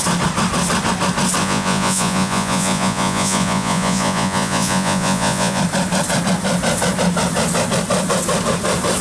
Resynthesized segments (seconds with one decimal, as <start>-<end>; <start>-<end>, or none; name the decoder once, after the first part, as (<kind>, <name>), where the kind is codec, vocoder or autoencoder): 1.4-5.6 (vocoder, Vocos)